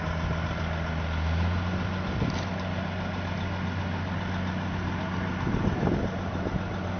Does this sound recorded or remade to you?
recorded